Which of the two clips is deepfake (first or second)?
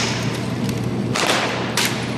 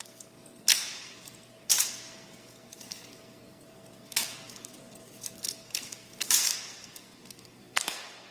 second